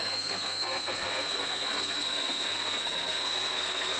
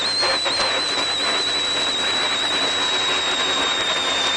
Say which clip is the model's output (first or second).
first